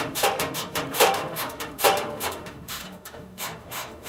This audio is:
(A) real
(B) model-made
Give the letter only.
B